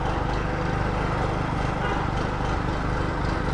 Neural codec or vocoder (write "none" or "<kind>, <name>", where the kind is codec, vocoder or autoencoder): none